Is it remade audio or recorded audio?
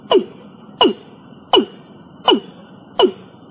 recorded